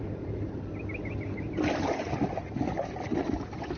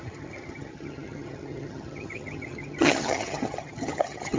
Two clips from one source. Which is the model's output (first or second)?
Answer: second